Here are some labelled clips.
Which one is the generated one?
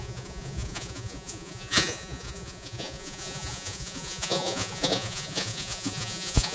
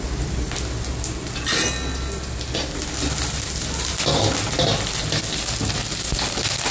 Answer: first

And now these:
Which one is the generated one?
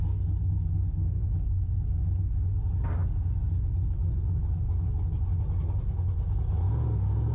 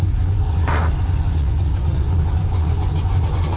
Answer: second